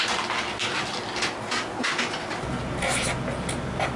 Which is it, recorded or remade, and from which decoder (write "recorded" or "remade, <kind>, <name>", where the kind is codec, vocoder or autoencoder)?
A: recorded